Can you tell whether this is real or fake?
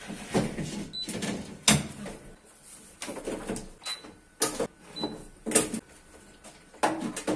real